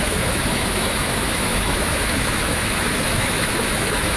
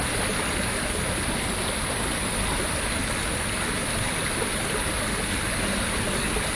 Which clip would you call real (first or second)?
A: second